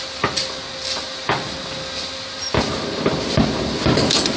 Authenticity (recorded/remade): recorded